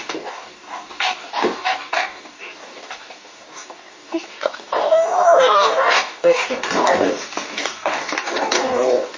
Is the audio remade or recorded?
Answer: remade